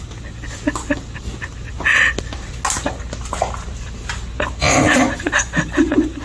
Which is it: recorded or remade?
recorded